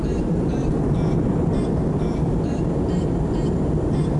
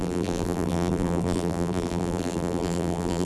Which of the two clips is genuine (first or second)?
first